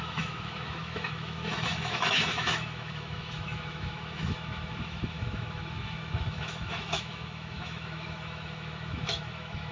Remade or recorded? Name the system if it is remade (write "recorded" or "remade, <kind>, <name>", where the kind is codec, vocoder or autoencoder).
remade, autoencoder, DAC-VAE